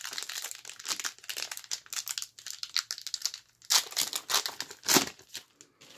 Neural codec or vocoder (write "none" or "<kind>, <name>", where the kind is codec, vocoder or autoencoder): none